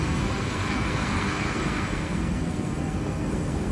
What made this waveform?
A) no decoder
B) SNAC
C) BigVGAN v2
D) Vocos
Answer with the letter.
B